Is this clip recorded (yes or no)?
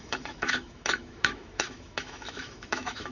no